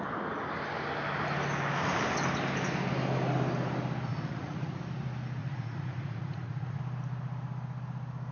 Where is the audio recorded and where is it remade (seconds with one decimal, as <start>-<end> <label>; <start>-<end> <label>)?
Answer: 0.0-4.1 recorded; 4.1-4.8 remade; 4.8-5.4 recorded; 5.4-6.8 remade; 6.8-8.3 recorded